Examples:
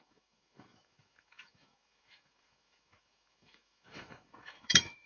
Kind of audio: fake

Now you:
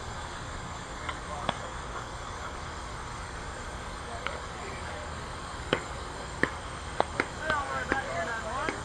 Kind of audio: fake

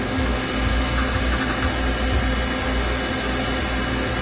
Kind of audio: real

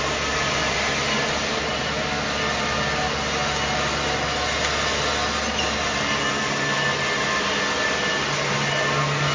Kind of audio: real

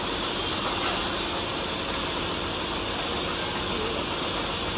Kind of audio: real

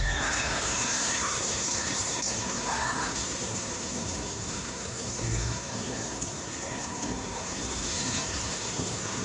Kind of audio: fake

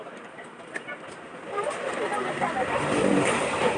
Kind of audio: real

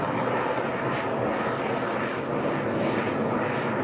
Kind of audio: real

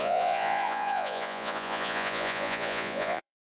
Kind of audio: fake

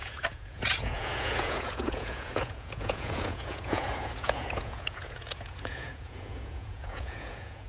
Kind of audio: fake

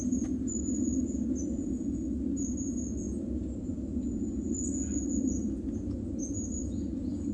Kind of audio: real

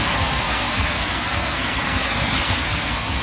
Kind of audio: fake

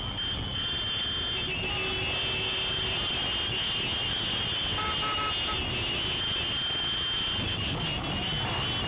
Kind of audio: real